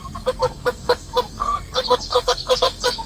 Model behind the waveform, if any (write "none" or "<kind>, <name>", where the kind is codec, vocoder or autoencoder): codec, SNAC